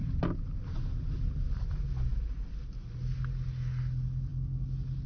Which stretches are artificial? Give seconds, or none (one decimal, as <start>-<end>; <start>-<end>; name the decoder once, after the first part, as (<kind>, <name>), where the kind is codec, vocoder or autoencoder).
none